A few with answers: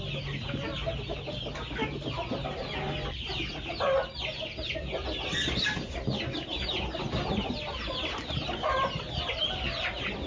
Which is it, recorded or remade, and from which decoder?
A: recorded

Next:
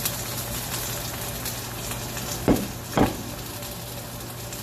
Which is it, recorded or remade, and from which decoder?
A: recorded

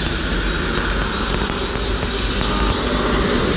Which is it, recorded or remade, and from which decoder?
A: recorded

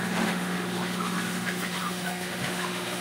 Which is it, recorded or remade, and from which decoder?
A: remade, autoencoder, DAC-VAE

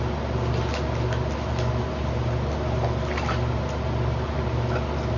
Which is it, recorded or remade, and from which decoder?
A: recorded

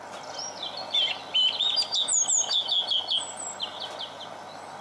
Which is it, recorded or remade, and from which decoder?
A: recorded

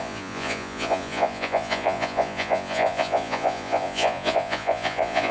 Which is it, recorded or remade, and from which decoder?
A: remade, vocoder, Vocos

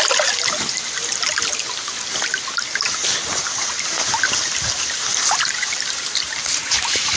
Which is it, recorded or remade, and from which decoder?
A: recorded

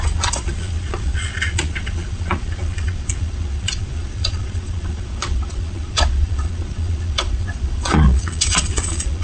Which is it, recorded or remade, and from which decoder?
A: remade, vocoder, Vocos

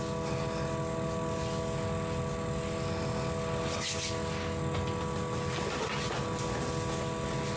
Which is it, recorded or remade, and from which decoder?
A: recorded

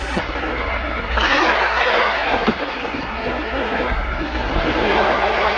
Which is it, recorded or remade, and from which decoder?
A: remade, codec, SNAC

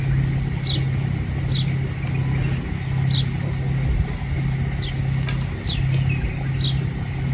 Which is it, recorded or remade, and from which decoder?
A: recorded